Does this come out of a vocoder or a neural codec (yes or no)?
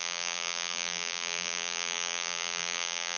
yes